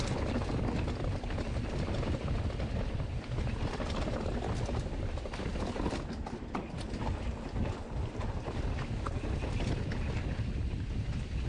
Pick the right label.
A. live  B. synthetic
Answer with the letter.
A